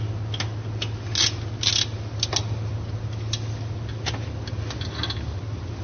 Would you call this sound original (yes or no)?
yes